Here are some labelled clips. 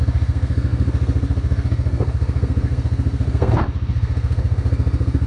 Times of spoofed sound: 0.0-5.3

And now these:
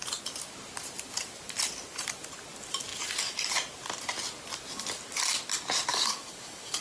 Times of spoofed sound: 5.9-6.8

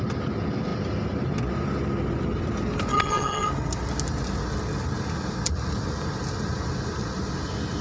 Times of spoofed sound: 2.9-3.5

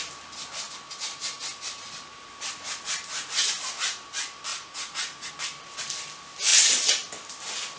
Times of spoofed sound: 4.5-5.3

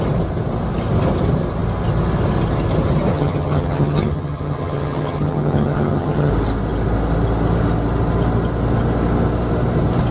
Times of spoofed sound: 3.1-6.3